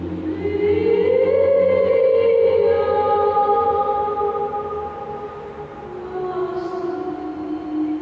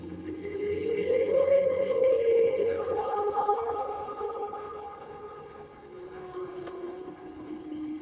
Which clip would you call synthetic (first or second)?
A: second